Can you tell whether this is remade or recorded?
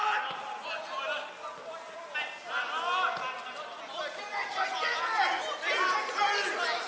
recorded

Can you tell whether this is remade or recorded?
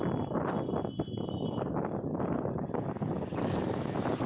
recorded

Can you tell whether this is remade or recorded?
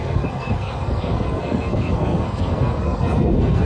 remade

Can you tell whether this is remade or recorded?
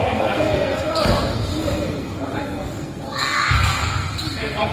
remade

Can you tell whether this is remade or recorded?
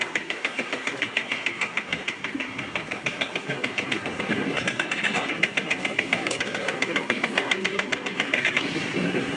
remade